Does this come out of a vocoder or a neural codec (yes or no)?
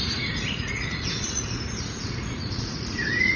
yes